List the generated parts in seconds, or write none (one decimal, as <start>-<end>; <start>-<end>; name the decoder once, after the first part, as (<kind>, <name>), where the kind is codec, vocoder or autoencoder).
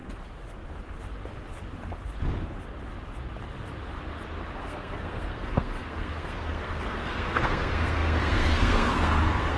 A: 4.6-9.6 (codec, SNAC)